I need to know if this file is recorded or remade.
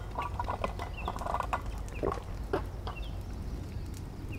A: recorded